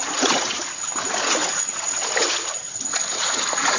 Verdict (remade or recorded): remade